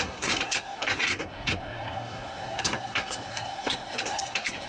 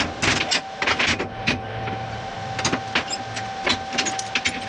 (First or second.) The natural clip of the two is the second